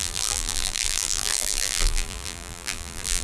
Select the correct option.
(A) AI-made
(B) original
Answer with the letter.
A